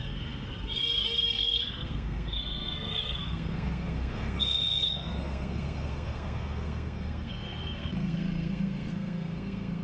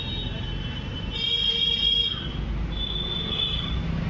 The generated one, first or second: first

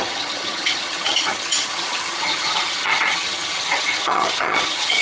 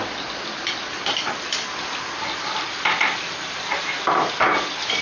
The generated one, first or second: first